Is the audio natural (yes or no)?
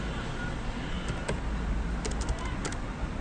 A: yes